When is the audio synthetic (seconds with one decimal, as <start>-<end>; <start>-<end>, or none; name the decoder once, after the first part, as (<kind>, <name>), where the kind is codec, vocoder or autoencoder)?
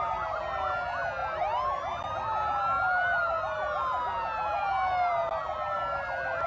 none